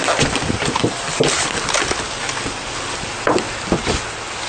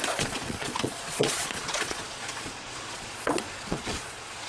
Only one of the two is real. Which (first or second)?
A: first